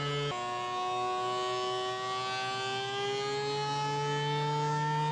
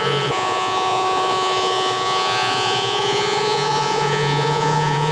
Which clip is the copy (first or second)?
second